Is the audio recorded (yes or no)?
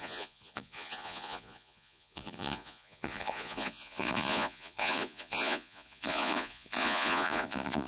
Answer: no